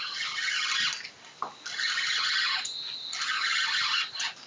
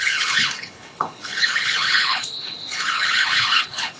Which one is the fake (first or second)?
second